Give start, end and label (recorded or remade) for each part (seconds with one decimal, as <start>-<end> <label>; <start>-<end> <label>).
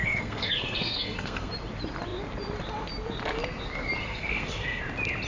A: 0.0-1.5 remade; 1.5-4.0 recorded; 4.0-4.8 remade; 4.8-5.3 recorded